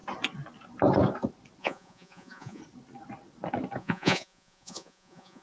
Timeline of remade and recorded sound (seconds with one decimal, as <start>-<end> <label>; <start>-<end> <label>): 0.0-1.6 recorded; 1.6-2.6 remade; 2.6-3.8 recorded; 3.8-5.4 remade